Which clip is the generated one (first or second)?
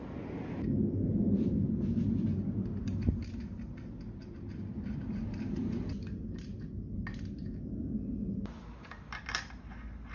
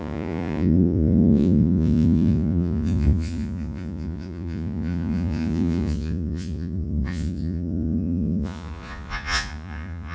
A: second